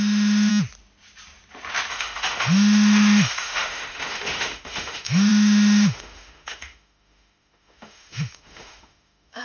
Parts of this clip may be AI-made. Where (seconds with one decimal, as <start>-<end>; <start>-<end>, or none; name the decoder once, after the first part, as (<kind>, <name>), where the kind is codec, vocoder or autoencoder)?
0.0-0.5 (autoencoder, DAC-VAE); 1.9-9.4